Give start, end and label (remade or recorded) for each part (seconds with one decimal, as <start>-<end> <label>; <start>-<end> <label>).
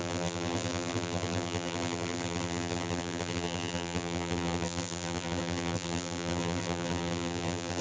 0.0-7.8 remade